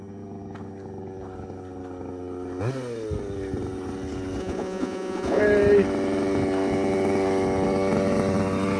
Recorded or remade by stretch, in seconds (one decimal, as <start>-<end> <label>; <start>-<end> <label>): 0.0-4.4 recorded; 4.4-5.4 remade; 5.4-8.8 recorded